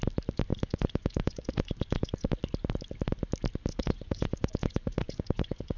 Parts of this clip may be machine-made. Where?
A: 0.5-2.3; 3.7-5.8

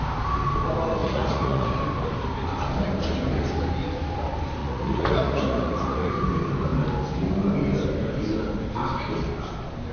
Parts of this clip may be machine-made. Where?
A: 1.0-1.8; 4.6-6.1

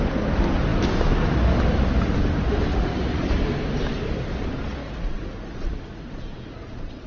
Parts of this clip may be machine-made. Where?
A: 2.7-3.4; 4.8-7.1

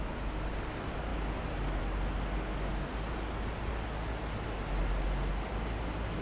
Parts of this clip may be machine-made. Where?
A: none

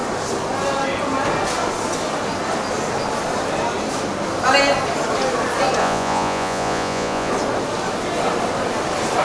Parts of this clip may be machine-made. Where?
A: 5.8-7.3

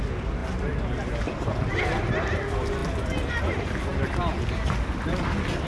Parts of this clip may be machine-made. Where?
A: none